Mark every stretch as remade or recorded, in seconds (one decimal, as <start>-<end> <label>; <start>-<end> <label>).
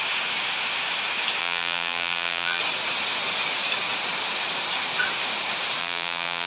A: 0.0-1.4 recorded; 1.4-2.6 remade; 2.6-5.8 recorded; 5.8-6.5 remade